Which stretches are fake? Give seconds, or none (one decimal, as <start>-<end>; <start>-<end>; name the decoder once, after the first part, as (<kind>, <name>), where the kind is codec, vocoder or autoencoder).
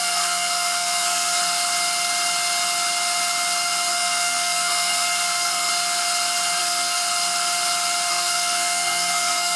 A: 0.0-1.4 (codec, SNAC); 3.9-5.7; 6.6-7.0; 8.1-9.6